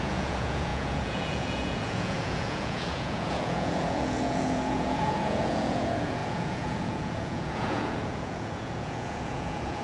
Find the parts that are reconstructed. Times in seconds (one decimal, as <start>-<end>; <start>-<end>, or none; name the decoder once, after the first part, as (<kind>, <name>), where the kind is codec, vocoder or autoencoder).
0.0-9.8 (vocoder, Vocos)